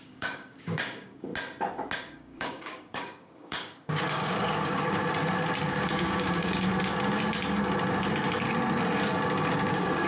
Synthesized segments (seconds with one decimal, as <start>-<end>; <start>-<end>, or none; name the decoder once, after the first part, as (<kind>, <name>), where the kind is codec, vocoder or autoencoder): 0.0-1.3 (codec, DAC); 2.0-5.0; 5.7-6.7; 9.5-10.1